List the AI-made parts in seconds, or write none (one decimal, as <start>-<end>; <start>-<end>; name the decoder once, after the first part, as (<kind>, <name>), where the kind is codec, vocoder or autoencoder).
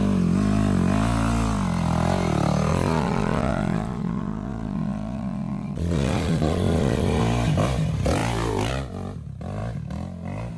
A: 2.7-7.2 (vocoder, Vocos)